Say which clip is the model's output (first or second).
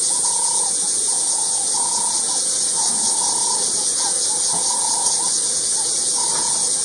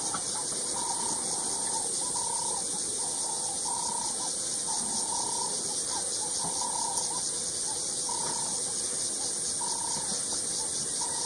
first